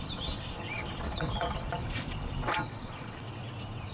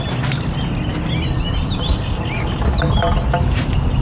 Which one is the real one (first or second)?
second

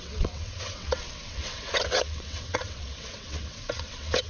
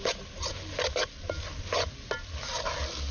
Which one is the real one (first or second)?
second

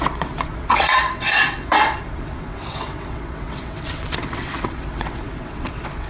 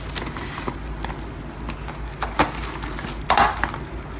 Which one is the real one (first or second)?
second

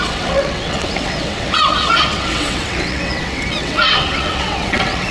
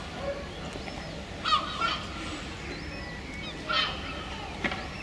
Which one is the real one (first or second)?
second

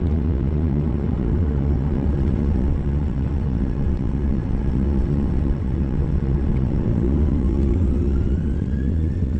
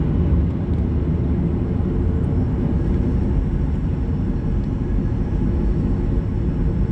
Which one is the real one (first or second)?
second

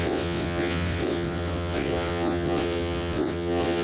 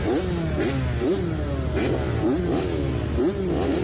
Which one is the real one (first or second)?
second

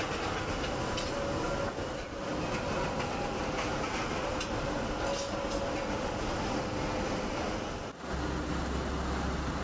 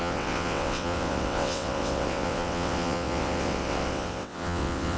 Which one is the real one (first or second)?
first